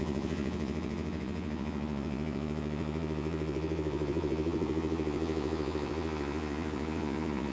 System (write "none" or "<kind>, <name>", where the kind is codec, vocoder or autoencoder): vocoder, Vocos